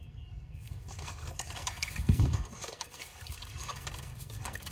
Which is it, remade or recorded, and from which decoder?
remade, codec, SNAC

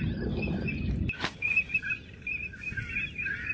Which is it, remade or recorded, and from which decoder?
recorded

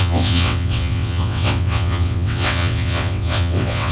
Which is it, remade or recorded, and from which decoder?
remade, vocoder, WaveNeXt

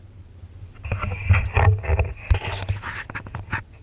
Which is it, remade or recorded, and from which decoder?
recorded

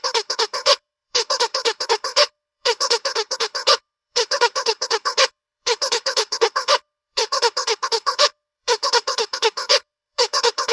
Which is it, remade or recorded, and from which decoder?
remade, codec, HILCodec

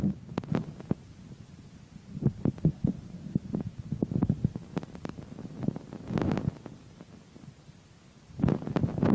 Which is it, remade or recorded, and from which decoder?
recorded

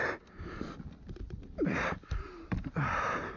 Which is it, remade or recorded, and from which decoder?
recorded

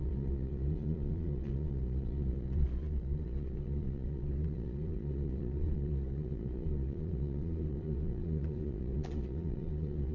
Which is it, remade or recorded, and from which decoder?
remade, vocoder, Vocos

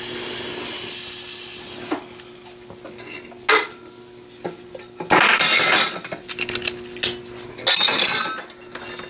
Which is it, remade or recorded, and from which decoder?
recorded